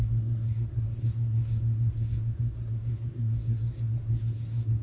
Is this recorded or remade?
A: remade